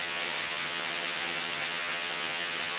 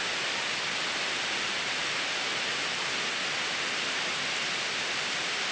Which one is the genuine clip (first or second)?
second